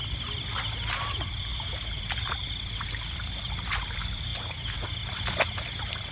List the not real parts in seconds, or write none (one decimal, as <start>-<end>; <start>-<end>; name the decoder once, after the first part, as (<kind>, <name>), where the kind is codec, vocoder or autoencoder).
0.0-6.1 (vocoder, BigVGAN v2)